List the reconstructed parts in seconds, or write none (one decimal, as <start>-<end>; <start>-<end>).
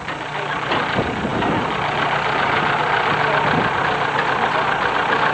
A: none